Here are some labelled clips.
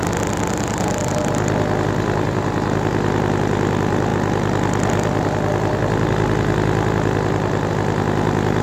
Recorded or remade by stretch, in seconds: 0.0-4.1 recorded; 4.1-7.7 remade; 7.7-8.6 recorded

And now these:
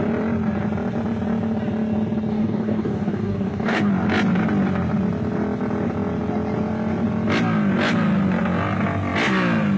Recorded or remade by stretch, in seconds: 0.0-2.3 recorded; 2.3-3.9 remade; 3.9-9.8 recorded

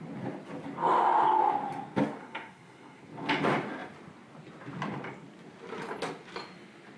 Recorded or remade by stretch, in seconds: 0.0-2.2 recorded; 2.2-3.0 remade; 3.0-7.0 recorded

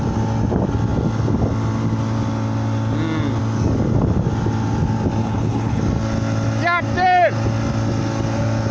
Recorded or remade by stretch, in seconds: 0.0-5.2 recorded; 5.2-5.8 remade; 5.8-8.7 recorded